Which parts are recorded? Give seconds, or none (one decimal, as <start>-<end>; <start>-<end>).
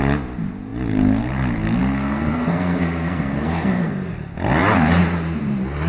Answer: 0.0-1.8; 4.1-5.9